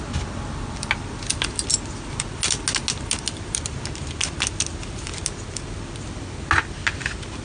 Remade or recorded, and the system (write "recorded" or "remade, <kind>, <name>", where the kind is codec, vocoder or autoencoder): recorded